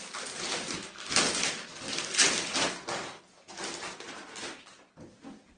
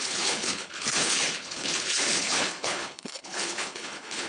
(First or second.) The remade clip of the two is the second